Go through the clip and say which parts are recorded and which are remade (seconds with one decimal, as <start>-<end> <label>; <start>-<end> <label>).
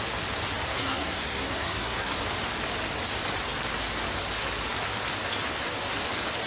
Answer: 0.0-0.6 recorded; 0.6-2.1 remade; 2.1-6.5 recorded